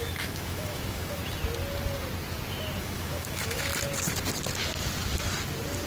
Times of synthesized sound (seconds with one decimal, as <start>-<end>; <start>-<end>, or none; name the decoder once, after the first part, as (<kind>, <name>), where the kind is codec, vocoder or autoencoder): 0.0-1.2 (autoencoder, DAC-VAE); 2.8-3.7